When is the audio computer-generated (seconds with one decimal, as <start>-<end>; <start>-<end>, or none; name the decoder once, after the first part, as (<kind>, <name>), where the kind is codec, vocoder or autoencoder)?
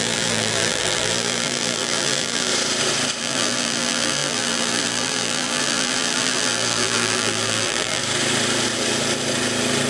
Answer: 0.0-2.5 (vocoder, BigVGAN v2); 3.2-8.0